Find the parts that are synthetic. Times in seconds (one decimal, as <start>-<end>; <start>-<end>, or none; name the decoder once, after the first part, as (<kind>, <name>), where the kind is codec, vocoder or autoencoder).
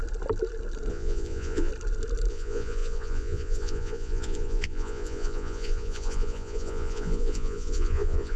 0.9-1.7 (vocoder, Vocos); 2.3-8.4